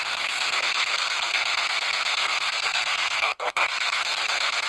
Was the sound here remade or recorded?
remade